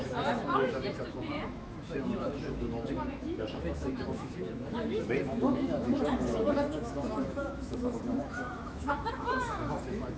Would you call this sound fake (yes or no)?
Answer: yes